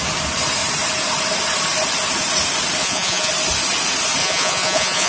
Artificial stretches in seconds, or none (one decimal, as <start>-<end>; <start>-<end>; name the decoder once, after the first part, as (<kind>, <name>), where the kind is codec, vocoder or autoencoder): 2.8-3.3 (vocoder, Vocos); 4.2-5.1